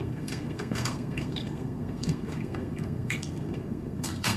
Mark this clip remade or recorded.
remade